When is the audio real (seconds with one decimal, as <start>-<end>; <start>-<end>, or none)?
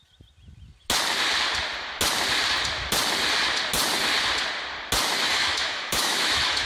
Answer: 0.0-5.3